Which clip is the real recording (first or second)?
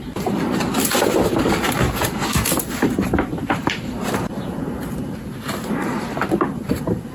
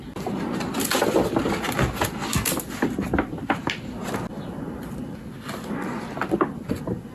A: second